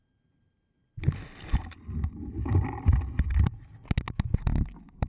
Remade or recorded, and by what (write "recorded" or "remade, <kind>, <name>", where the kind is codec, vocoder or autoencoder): recorded